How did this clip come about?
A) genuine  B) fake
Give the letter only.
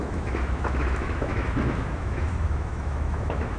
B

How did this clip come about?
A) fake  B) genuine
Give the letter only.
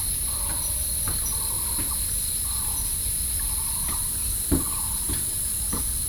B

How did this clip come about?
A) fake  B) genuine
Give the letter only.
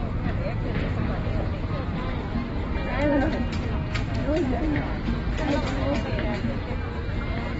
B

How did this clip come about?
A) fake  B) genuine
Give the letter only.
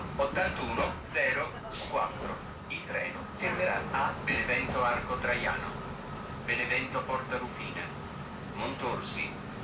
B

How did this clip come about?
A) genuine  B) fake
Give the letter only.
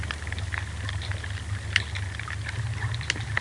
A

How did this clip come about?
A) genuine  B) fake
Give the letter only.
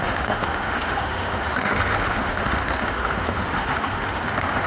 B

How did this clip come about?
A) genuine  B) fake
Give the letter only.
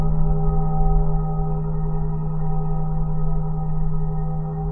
B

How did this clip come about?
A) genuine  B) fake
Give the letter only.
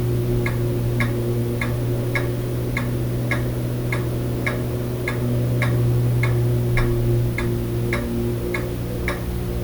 A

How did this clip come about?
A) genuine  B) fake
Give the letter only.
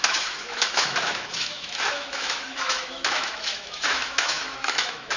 B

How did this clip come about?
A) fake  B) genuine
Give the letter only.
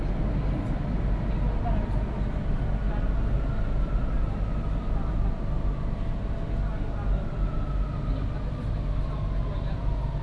B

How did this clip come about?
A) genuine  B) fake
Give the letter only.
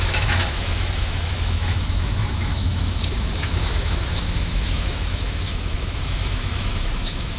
B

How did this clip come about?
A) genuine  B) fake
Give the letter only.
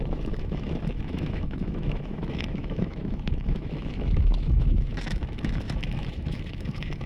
B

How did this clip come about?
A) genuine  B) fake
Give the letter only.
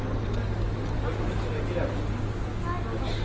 A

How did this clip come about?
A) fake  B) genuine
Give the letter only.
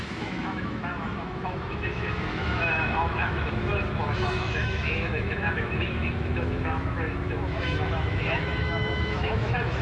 A